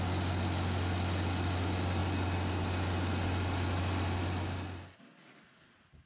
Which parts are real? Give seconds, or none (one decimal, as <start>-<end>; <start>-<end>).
0.0-6.1